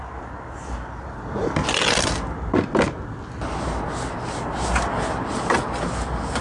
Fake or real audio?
real